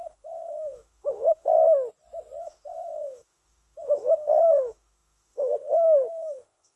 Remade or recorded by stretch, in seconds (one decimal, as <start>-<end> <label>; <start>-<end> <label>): 0.0-1.6 remade; 1.6-2.4 recorded; 2.4-6.8 remade